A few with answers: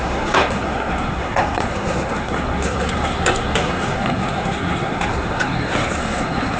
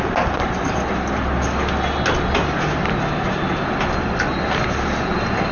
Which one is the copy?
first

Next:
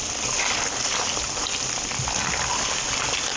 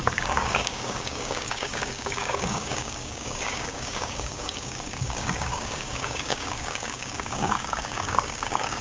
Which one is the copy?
second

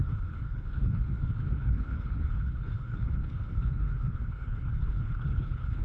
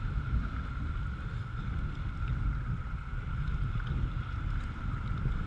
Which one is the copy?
first